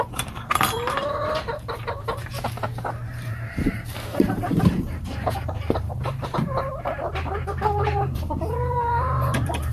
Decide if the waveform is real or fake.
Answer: fake